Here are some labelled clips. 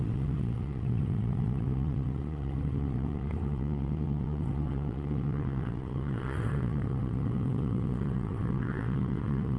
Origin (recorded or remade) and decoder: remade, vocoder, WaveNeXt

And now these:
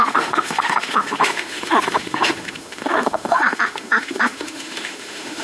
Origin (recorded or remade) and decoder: remade, autoencoder, DAC-VAE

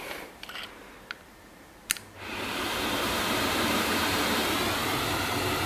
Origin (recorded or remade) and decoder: remade, vocoder, BigVGAN v2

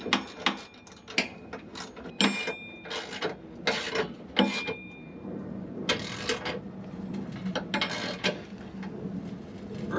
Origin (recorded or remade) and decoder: recorded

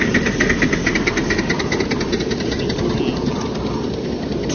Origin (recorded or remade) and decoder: recorded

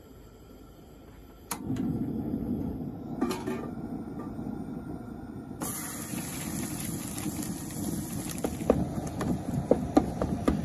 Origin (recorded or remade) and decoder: recorded